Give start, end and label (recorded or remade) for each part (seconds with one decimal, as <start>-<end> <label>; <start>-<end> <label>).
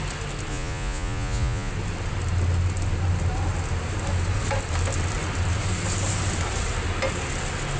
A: 0.0-0.5 recorded; 0.5-1.7 remade; 1.7-7.8 recorded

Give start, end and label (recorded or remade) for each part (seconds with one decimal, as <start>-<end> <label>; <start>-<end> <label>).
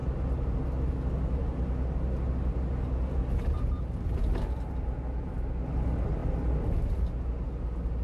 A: 0.0-8.0 recorded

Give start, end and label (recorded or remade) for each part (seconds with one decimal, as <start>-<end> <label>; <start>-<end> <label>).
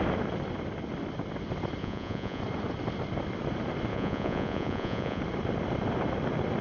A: 0.0-1.8 recorded; 1.8-2.4 remade; 2.4-3.9 recorded; 3.9-5.2 remade; 5.2-6.6 recorded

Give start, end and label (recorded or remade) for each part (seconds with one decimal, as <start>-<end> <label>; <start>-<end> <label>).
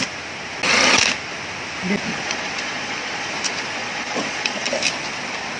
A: 0.0-2.1 recorded; 2.1-3.3 remade; 3.3-3.8 recorded; 3.8-4.7 remade; 4.7-5.6 recorded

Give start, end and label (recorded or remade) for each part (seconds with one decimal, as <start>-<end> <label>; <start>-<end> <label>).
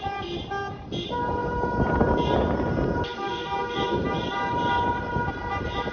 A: 0.0-5.9 recorded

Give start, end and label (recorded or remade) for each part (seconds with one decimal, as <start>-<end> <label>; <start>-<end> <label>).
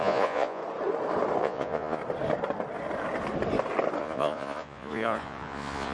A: 0.0-0.6 remade; 0.6-1.4 recorded; 1.4-2.0 remade; 2.0-4.0 recorded; 4.0-5.9 remade